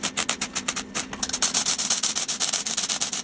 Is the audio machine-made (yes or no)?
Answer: no